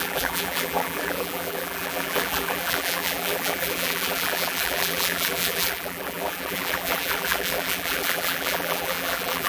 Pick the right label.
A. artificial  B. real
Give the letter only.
A